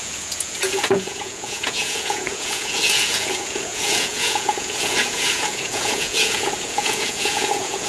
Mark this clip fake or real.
fake